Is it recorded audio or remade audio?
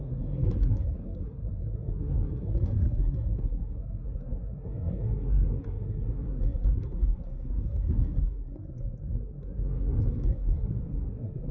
remade